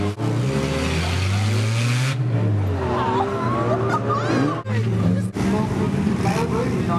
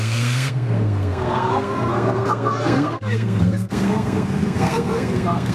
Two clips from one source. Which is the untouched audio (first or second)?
first